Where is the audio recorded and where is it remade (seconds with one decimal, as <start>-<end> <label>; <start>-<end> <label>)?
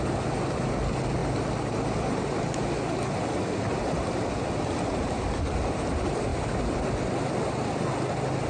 0.0-8.5 recorded